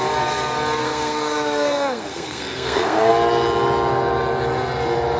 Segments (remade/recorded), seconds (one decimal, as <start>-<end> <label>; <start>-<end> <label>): 0.0-0.8 recorded; 0.8-3.1 remade; 3.1-5.2 recorded